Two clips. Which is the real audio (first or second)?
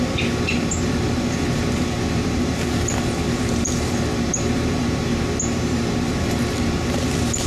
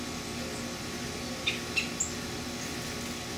second